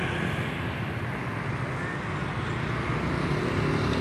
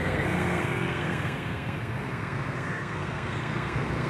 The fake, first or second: second